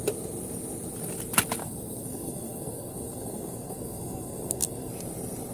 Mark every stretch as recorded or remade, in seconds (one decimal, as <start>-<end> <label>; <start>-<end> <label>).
0.0-1.6 recorded; 1.6-4.9 remade; 4.9-5.5 recorded